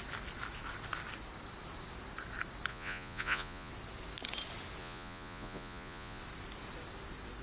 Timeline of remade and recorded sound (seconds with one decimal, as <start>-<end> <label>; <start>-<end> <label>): 0.0-2.7 recorded; 2.7-3.7 remade; 3.7-4.8 recorded; 4.8-6.2 remade; 6.2-7.4 recorded